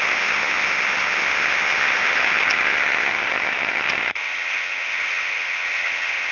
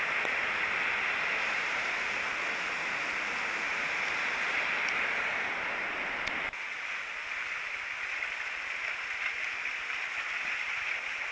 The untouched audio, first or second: second